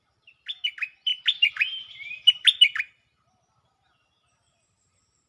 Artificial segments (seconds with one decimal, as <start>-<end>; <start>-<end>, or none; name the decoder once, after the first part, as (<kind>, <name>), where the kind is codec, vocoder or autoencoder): 0.0-5.3 (vocoder, BigVGAN v2)